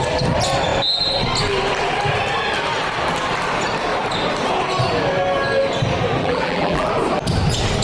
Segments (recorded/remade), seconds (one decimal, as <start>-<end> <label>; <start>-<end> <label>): 0.0-6.2 recorded; 6.2-6.9 remade; 6.9-7.8 recorded